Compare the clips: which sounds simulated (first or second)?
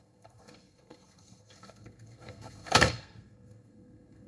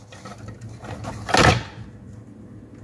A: first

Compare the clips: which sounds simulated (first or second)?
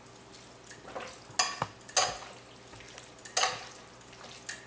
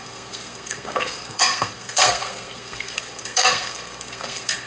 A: second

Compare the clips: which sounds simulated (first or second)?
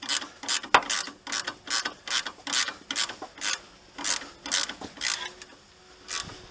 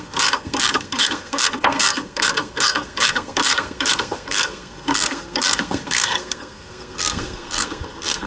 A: second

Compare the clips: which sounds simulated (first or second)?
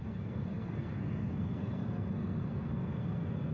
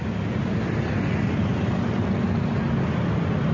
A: first